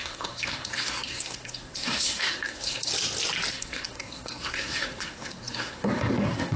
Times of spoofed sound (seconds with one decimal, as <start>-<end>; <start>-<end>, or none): 0.0-2.9; 3.5-6.6